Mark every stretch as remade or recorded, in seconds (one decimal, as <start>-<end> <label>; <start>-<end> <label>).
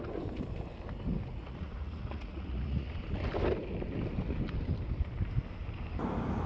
0.0-1.3 recorded; 1.3-2.9 remade; 2.9-6.5 recorded